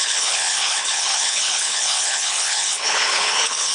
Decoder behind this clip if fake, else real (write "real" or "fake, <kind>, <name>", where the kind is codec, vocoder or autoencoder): fake, codec, HILCodec